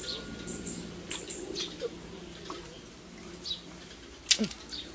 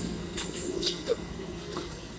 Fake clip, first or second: second